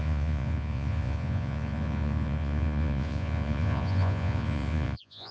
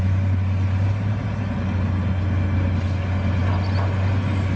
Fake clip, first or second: first